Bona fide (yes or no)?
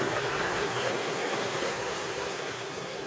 no